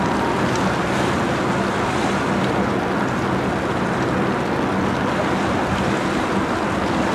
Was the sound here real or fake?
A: real